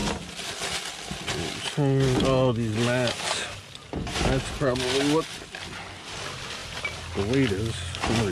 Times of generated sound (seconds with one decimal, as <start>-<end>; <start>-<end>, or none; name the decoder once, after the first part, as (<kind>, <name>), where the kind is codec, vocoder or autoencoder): none